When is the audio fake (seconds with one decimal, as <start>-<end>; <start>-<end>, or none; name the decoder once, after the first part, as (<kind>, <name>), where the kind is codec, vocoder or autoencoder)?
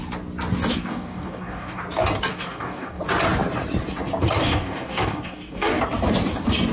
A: 0.7-1.8 (codec, DAC); 2.3-3.0; 4.4-5.8